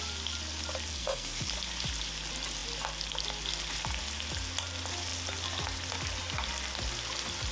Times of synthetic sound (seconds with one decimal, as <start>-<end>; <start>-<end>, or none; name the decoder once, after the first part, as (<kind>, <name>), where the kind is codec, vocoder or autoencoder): 0.9-1.5 (codec, SNAC)

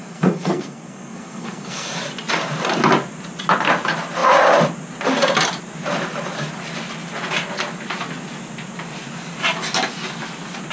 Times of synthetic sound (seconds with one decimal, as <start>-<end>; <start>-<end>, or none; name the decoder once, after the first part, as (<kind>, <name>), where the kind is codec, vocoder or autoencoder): 0.0-2.0 (codec, SNAC)